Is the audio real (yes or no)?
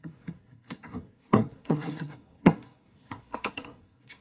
no